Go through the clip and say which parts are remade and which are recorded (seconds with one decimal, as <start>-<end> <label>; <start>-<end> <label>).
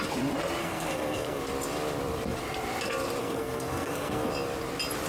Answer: 0.0-0.6 recorded; 0.6-1.4 remade; 1.4-3.2 recorded; 3.2-4.3 remade; 4.3-5.1 recorded